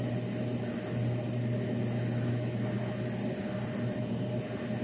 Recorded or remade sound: recorded